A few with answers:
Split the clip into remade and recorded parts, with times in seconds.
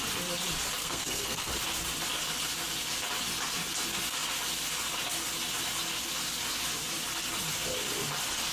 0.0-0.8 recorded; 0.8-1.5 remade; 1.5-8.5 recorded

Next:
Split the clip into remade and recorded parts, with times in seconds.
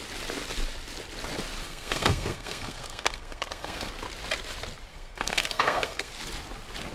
0.0-1.6 recorded; 1.6-3.9 remade; 3.9-4.9 recorded; 4.9-6.1 remade; 6.1-6.9 recorded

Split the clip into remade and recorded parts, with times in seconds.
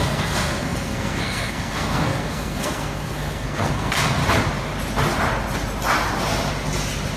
0.0-4.2 remade; 4.2-7.2 recorded